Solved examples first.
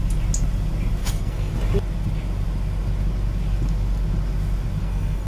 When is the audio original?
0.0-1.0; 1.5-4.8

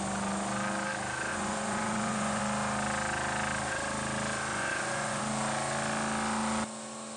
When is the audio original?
0.0-1.3; 2.4-4.5; 5.2-7.2

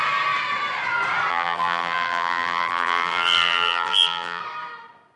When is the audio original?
0.0-1.3; 4.4-5.2

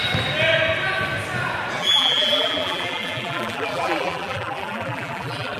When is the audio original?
0.0-1.8

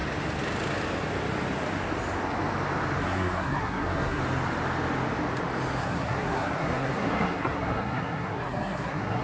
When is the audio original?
0.0-3.0; 4.2-5.8

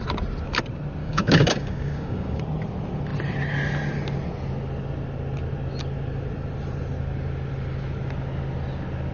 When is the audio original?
0.0-1.0; 2.4-9.1

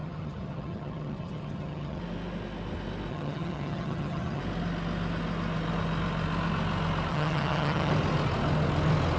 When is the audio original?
2.0-3.1; 4.4-7.1; 7.9-9.2

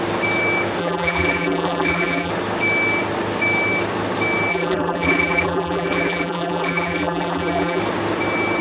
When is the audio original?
0.0-0.8; 2.3-4.5; 7.8-8.6